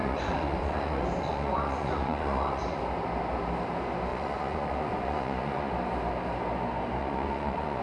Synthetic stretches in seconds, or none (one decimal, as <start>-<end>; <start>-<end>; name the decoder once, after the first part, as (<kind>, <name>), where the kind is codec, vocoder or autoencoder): 0.0-2.8 (vocoder, Vocos); 4.1-5.7; 7.0-7.8